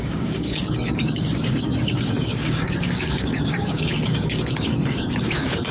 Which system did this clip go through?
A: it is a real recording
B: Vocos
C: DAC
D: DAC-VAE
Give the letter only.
C